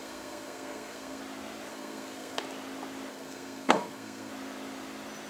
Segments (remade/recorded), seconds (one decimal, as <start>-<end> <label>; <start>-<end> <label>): 0.0-1.2 remade; 1.2-1.7 recorded; 1.7-2.4 remade; 2.4-3.1 recorded; 3.1-4.3 remade; 4.3-5.3 recorded